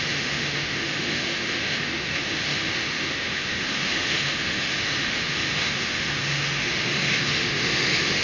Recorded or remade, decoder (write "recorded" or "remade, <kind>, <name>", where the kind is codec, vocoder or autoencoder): remade, autoencoder, DAC-VAE